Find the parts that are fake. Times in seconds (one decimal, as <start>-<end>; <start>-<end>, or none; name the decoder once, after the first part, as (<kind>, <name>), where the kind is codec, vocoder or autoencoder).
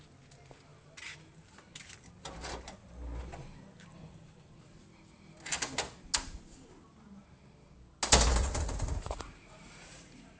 8.4-10.4 (vocoder, Vocos)